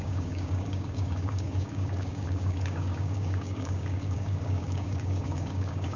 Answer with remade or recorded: remade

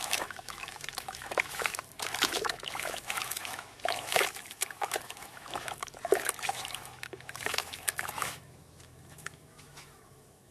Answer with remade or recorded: remade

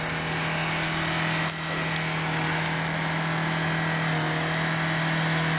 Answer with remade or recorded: recorded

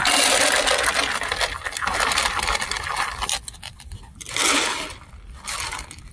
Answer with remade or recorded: recorded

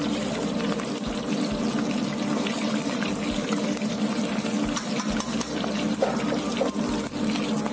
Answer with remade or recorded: recorded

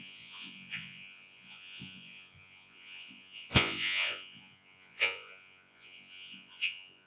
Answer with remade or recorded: remade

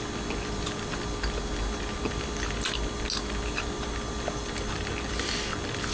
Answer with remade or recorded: recorded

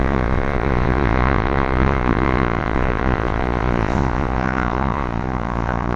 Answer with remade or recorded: remade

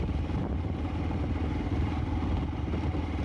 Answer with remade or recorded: recorded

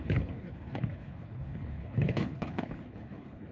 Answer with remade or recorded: remade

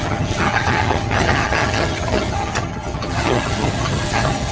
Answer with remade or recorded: remade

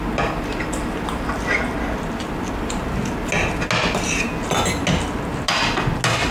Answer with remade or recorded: recorded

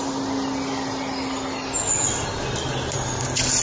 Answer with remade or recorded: recorded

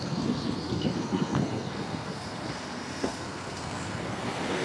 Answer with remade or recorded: remade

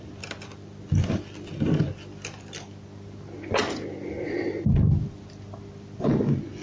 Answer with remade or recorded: recorded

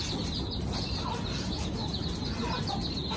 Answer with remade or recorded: recorded